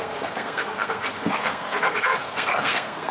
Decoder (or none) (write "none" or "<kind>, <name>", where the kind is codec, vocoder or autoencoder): codec, SNAC